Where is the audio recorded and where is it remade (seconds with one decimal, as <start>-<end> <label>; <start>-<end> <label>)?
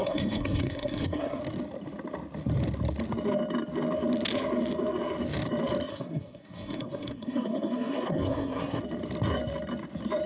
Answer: 0.0-1.4 remade; 1.4-5.9 recorded; 5.9-8.8 remade; 8.8-10.3 recorded